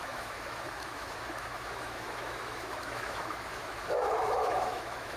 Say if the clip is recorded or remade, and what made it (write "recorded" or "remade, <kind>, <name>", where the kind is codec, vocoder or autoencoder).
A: remade, autoencoder, DAC-VAE